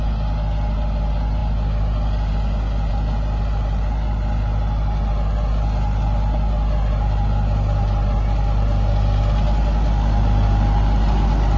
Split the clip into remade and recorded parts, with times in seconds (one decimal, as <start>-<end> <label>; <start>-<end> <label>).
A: 0.0-11.6 recorded